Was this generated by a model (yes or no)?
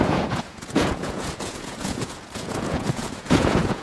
yes